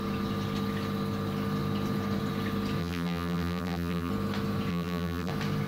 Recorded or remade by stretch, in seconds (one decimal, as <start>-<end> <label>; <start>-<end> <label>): 0.0-2.8 recorded; 2.8-4.1 remade; 4.1-4.7 recorded; 4.7-5.3 remade; 5.3-5.7 recorded